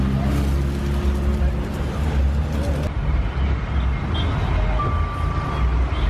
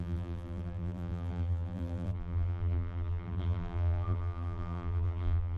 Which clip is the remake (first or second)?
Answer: second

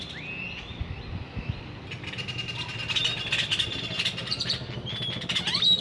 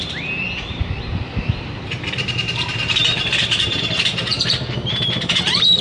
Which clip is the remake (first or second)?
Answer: second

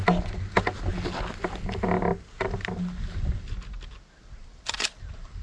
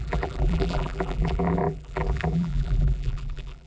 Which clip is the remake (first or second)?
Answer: second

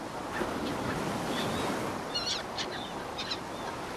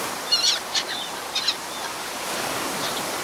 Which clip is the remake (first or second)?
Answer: second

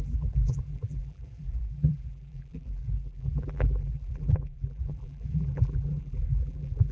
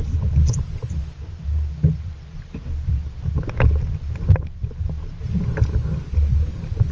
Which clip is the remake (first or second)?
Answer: first